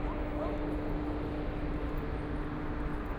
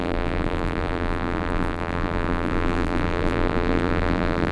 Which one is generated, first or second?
second